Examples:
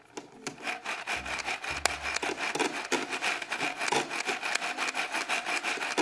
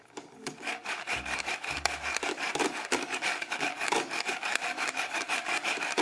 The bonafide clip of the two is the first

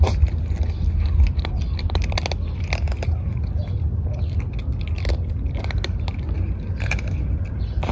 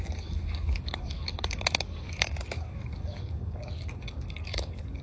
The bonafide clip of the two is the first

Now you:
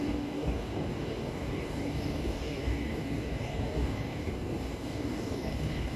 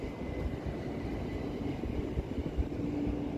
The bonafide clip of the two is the second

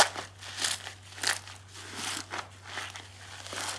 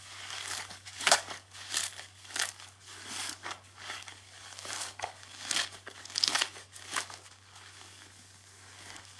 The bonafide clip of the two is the first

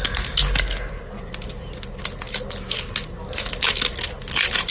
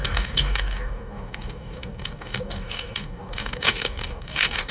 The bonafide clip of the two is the first